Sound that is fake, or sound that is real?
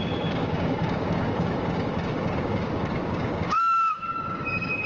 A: fake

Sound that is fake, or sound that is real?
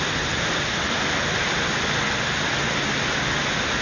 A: real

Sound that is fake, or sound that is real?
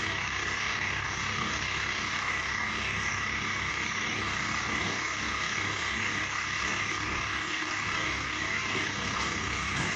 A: fake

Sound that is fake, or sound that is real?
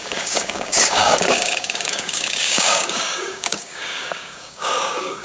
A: fake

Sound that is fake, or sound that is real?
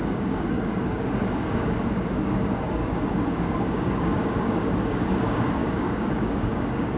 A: fake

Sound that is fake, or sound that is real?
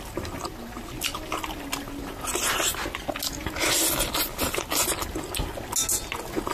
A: real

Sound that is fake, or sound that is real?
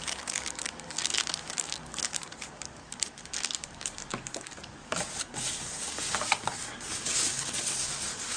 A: fake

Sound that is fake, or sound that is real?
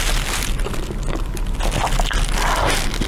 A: real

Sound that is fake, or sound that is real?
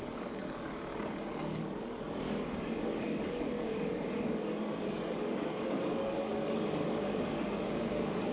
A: fake